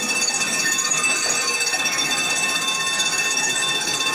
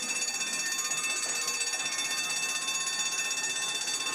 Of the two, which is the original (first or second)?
second